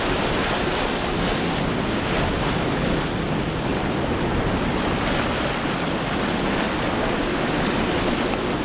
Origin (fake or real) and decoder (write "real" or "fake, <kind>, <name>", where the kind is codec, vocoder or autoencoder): real